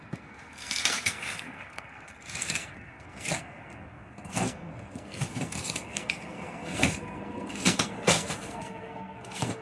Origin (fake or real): fake